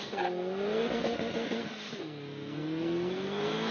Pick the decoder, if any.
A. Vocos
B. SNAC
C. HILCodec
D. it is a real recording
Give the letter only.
B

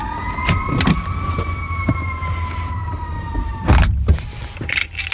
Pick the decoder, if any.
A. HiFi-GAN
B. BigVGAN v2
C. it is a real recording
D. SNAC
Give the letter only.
C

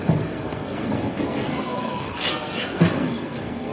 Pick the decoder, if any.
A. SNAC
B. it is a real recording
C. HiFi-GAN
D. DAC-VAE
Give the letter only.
A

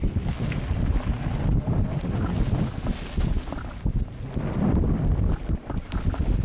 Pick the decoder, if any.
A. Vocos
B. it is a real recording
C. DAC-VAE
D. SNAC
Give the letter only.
B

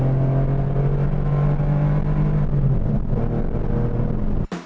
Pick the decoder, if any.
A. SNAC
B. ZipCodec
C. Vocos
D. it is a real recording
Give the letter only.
D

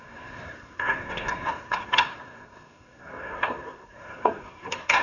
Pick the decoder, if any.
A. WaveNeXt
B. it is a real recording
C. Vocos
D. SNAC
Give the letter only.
D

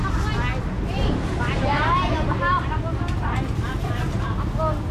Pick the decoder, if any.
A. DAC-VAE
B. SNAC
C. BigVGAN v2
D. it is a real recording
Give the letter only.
D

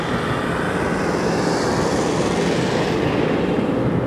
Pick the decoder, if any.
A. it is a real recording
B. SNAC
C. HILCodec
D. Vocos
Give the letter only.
A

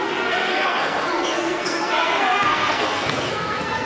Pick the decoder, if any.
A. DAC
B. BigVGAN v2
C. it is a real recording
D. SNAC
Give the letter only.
D